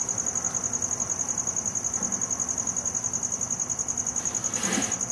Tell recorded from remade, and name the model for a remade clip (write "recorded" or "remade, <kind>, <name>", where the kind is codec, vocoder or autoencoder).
recorded